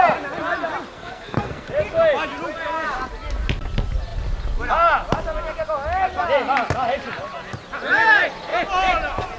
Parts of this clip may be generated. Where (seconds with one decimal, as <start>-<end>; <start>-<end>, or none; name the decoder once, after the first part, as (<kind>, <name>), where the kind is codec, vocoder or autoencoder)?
0.9-1.7 (codec, SNAC)